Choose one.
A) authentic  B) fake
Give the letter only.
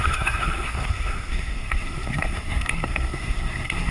B